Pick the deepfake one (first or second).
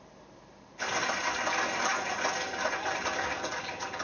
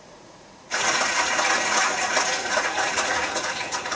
second